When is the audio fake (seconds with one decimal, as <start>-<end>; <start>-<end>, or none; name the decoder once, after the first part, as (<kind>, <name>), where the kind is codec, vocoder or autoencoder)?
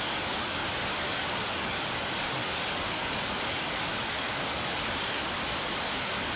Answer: 0.0-0.6 (codec, DAC); 1.1-6.4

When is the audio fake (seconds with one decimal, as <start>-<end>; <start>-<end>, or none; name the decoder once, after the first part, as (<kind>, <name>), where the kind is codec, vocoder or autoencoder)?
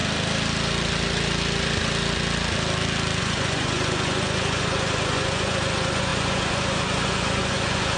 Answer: 3.2-8.0 (vocoder, Vocos)